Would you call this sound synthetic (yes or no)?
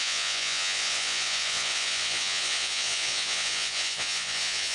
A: yes